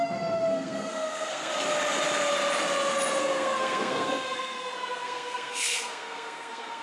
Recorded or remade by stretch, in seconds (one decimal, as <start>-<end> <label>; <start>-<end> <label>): 0.0-1.5 remade; 1.5-3.2 recorded; 3.2-6.8 remade